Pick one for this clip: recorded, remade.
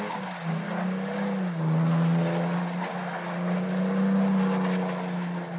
recorded